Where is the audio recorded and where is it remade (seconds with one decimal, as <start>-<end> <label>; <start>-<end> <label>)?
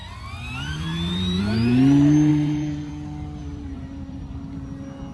0.0-1.4 remade; 1.4-2.3 recorded; 2.3-2.9 remade; 2.9-3.4 recorded; 3.4-4.2 remade; 4.2-5.1 recorded